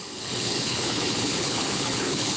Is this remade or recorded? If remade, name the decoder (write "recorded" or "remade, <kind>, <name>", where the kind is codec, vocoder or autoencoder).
remade, codec, HILCodec